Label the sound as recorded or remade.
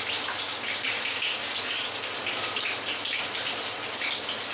recorded